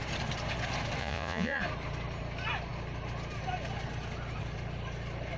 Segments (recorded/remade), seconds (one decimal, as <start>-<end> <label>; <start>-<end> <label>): 0.0-1.0 recorded; 1.0-1.6 remade; 1.6-5.4 recorded